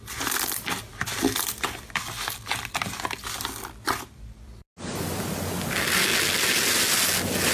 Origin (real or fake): real